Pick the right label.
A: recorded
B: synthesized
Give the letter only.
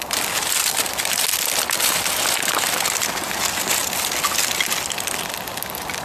A